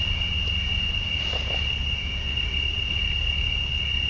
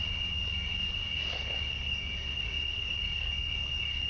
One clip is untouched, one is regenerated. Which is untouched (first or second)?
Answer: first